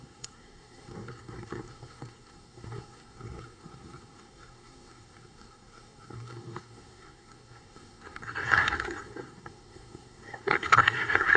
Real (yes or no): no